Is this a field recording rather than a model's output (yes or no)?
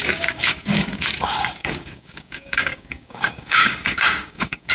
no